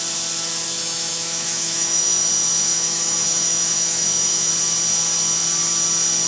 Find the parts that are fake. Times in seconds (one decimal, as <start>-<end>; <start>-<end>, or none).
0.8-2.3; 2.7-4.5